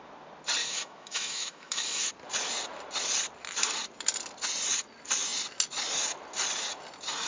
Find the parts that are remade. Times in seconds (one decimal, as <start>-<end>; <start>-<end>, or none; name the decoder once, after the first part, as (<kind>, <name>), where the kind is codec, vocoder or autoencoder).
0.6-2.1 (autoencoder, DAC-VAE)